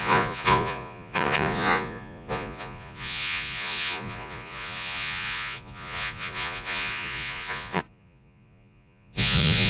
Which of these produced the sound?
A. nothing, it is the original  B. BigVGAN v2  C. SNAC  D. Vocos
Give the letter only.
D